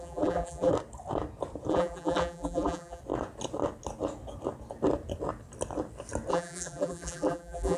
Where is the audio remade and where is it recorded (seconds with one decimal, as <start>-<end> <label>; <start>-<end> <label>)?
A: 0.0-0.7 remade; 0.7-1.7 recorded; 1.7-3.0 remade; 3.0-6.3 recorded; 6.3-7.8 remade